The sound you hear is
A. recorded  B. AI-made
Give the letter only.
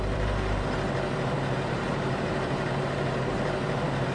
B